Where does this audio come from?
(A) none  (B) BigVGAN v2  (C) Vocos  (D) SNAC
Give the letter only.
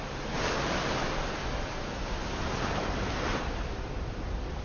A